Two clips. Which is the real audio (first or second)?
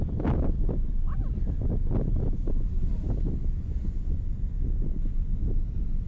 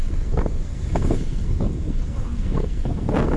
first